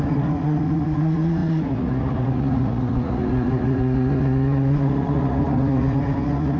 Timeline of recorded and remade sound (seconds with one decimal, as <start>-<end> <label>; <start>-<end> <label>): 0.0-6.6 remade